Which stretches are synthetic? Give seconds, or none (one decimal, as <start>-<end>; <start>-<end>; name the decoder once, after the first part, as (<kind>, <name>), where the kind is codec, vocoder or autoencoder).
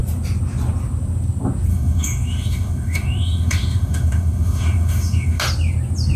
1.7-5.4 (autoencoder, DAC-VAE)